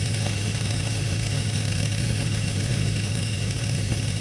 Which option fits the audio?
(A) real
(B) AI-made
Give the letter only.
B